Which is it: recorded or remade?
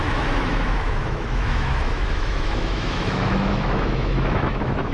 remade